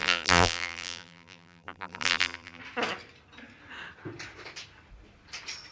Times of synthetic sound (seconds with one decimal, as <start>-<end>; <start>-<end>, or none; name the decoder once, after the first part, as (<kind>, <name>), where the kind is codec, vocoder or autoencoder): 0.0-2.6 (vocoder, BigVGAN v2)